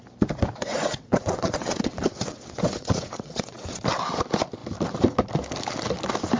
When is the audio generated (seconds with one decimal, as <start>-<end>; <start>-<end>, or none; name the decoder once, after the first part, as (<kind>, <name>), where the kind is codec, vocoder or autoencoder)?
0.6-3.8 (vocoder, WaveNeXt)